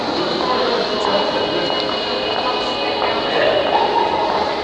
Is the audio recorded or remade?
recorded